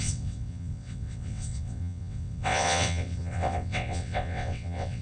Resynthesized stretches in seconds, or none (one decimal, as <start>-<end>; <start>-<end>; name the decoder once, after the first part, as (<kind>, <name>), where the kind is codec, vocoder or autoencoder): 0.0-5.0 (vocoder, WaveNeXt)